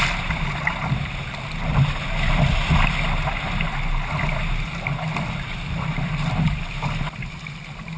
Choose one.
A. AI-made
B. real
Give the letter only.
B